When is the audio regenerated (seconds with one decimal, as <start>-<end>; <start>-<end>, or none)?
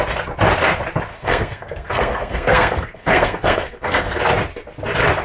1.1-4.2